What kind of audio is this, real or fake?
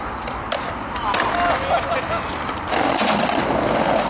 real